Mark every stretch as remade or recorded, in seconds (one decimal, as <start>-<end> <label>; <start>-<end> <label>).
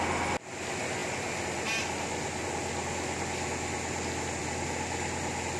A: 0.0-5.6 recorded